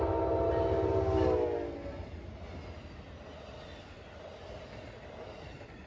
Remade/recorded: recorded